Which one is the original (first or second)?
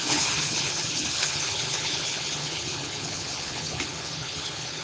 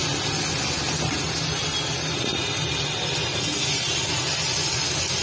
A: second